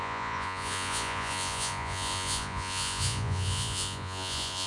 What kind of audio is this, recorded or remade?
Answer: remade